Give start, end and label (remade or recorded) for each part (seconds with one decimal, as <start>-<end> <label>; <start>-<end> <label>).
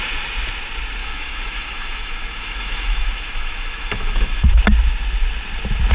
0.0-1.0 recorded; 1.0-4.5 remade; 4.5-5.9 recorded